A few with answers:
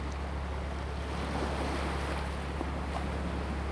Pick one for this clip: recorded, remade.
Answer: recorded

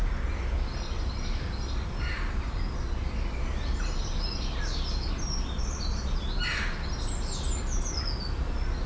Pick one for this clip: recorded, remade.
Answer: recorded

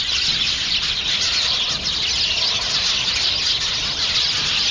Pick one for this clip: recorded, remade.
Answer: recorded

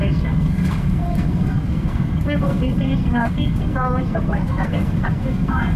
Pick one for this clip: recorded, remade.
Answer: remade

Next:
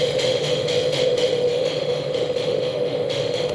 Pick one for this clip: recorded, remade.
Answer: remade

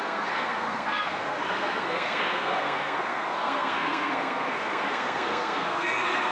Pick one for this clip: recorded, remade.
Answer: remade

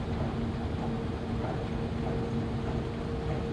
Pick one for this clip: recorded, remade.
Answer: recorded